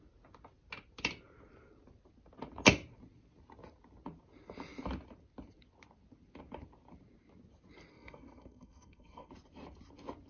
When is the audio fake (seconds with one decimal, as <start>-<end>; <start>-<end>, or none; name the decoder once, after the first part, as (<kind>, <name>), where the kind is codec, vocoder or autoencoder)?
7.9-9.3 (codec, SNAC)